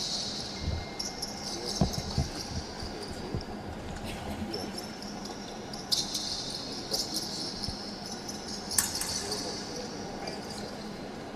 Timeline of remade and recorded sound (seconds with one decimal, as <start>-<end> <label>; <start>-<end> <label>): 0.0-11.4 recorded